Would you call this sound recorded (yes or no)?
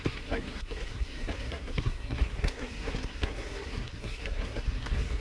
no